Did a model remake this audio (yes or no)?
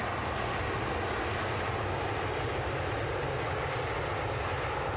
no